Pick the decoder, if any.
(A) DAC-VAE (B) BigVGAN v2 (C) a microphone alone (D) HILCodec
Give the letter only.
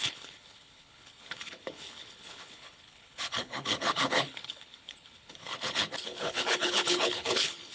D